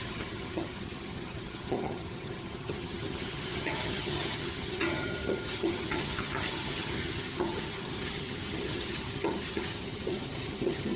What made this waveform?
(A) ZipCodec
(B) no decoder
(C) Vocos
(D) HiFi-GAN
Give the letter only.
D